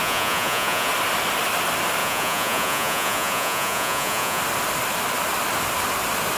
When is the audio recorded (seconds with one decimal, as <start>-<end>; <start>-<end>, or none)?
0.9-2.0; 4.4-6.4